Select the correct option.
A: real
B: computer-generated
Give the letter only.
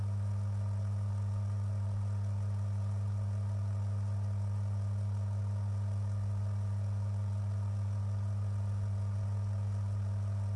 A